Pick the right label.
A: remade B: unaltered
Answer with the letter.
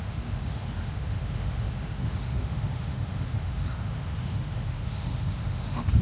A